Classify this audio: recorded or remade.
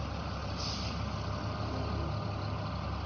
recorded